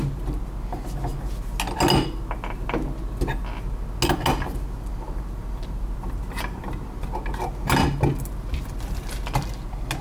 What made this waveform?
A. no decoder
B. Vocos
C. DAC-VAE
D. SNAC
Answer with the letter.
A